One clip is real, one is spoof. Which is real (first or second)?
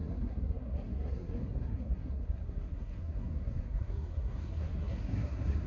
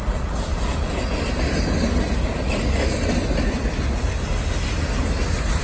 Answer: second